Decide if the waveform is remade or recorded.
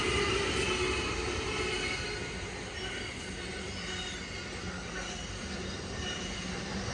recorded